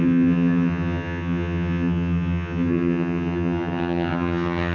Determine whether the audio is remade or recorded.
remade